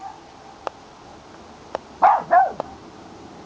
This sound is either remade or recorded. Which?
recorded